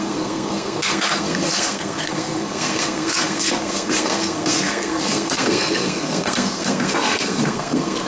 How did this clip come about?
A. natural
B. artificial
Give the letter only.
B